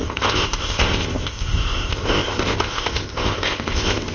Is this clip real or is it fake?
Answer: fake